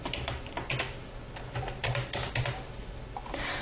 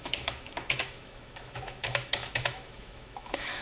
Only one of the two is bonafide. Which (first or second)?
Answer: first